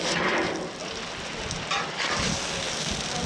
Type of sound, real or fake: real